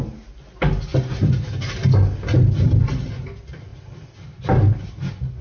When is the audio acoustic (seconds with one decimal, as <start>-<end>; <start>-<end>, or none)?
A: 0.0-5.4